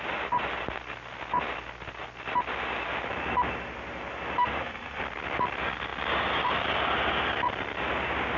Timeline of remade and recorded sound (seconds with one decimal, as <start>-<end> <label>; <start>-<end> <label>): 0.0-4.4 recorded; 4.4-5.0 remade; 5.0-8.4 recorded